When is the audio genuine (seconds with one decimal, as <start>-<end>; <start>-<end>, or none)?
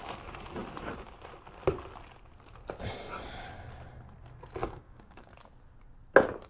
0.0-4.6; 5.3-6.5